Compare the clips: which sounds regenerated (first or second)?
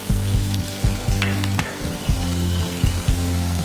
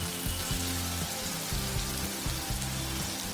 first